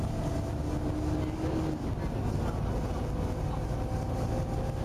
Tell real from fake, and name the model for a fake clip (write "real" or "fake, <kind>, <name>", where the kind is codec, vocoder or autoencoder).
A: real